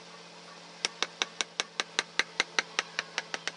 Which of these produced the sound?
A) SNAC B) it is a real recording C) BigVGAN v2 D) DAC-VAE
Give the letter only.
B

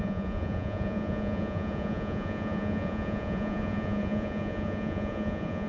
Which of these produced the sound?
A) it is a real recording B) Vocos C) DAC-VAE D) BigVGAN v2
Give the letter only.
B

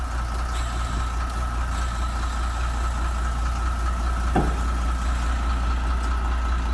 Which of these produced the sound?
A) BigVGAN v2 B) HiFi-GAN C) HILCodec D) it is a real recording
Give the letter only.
D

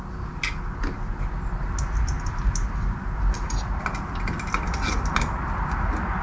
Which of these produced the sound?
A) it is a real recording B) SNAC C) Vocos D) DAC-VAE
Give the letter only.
A